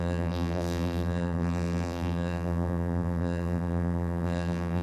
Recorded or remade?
remade